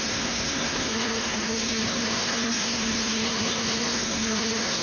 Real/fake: fake